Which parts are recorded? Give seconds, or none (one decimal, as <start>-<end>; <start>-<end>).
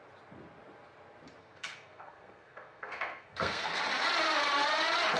0.0-1.4; 3.8-5.2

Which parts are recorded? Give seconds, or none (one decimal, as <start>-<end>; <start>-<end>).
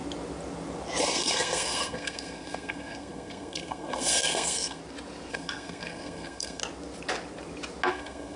0.0-1.0; 4.8-5.3; 6.6-7.9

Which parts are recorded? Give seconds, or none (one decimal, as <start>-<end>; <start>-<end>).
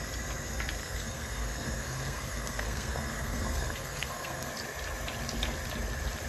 0.0-0.8; 4.5-6.3